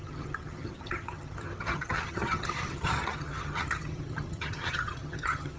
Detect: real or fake fake